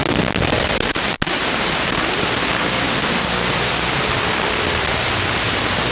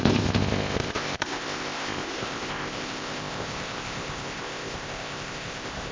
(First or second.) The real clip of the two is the first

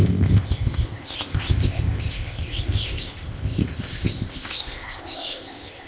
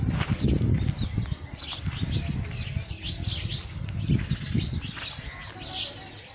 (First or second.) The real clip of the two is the second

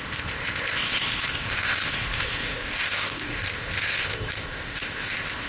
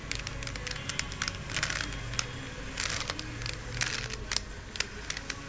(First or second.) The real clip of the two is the second